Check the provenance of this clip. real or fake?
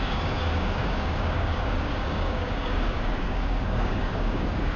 fake